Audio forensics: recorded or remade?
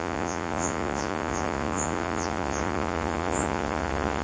remade